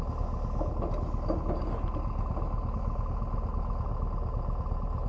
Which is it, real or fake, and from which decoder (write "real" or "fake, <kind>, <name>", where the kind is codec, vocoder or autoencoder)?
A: real